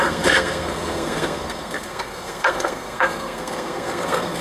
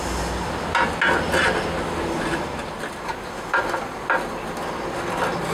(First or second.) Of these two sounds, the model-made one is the first